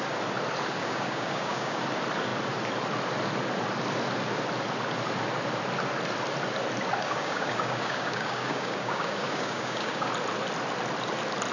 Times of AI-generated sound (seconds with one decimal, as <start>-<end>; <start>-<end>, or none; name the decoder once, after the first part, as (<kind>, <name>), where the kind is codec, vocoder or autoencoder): 0.8-1.8 (codec, DAC); 7.0-10.1